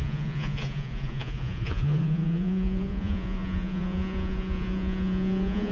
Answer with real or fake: fake